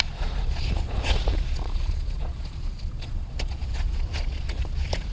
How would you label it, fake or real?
fake